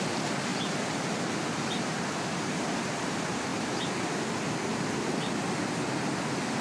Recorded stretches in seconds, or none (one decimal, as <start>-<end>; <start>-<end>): 0.0-6.6